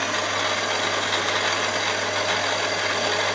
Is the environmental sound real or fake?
real